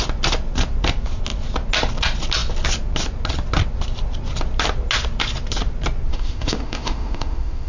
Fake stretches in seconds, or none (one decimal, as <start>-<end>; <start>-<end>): 6.1-7.7